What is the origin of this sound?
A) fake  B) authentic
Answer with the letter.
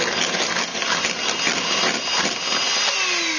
B